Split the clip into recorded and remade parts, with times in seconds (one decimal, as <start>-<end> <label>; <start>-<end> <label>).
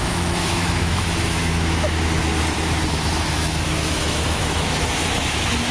0.0-2.3 remade; 2.3-2.9 recorded; 2.9-5.7 remade